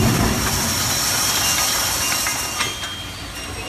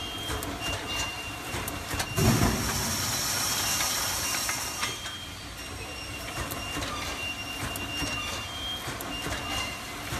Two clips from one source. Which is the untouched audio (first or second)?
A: first